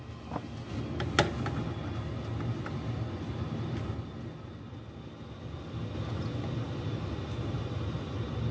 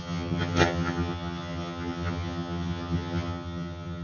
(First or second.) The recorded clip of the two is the first